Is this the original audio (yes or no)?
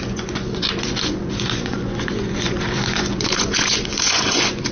no